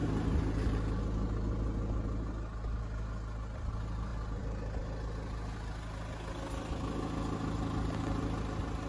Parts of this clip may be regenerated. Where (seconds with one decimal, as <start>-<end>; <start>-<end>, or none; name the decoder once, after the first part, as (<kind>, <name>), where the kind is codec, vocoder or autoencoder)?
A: none